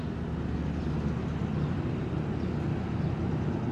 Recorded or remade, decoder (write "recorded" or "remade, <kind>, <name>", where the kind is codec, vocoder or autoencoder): recorded